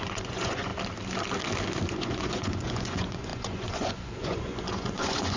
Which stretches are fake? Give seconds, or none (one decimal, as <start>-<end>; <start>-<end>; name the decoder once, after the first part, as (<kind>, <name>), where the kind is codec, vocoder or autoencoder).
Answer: 0.0-0.7 (vocoder, Vocos); 1.9-5.4